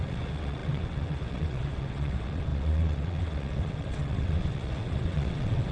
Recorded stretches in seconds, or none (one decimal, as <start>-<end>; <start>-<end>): none